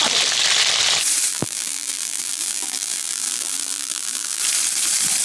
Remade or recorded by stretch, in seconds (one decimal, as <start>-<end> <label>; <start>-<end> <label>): 0.0-1.3 recorded; 1.3-4.4 remade; 4.4-5.2 recorded

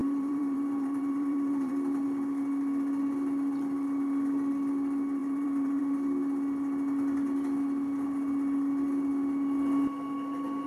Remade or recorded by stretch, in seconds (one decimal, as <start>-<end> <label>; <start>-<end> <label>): 0.0-1.7 remade; 1.7-5.2 recorded; 5.2-5.8 remade; 5.8-10.7 recorded

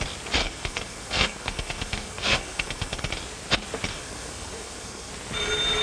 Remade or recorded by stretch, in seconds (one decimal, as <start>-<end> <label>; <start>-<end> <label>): 0.0-0.4 recorded; 0.4-3.1 remade; 3.1-3.9 recorded; 3.9-5.1 remade; 5.1-5.8 recorded

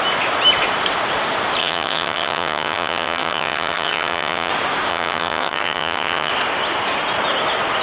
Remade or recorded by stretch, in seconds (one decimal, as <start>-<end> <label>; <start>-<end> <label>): 0.0-1.6 recorded; 1.6-4.5 remade; 4.5-4.9 recorded; 4.9-6.3 remade; 6.3-7.8 recorded

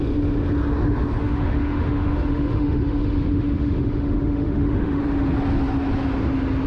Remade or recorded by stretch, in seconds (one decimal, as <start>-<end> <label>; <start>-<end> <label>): 0.0-1.2 recorded; 1.2-5.0 remade; 5.0-6.7 recorded

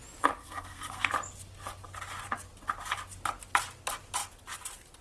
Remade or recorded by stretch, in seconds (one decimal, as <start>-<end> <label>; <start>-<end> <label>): 0.0-0.4 recorded; 0.4-1.1 remade; 1.1-5.0 recorded

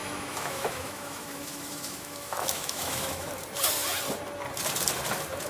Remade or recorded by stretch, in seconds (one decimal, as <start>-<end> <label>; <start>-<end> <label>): 0.0-3.3 remade; 3.3-5.5 recorded